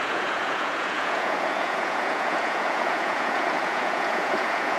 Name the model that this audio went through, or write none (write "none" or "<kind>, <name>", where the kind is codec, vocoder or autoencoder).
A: vocoder, Vocos